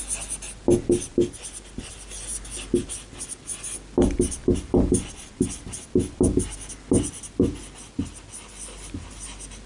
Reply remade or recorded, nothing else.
recorded